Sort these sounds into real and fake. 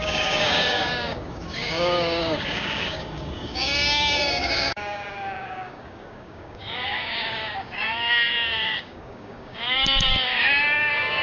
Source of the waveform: fake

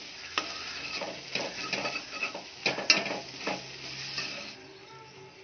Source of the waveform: real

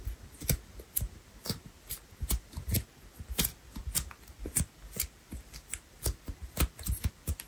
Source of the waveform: real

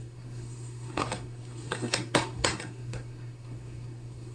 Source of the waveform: fake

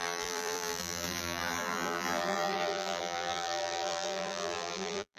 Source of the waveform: fake